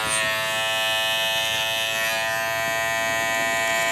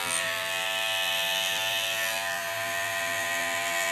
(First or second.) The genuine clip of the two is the first